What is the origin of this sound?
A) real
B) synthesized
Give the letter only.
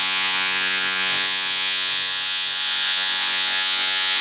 B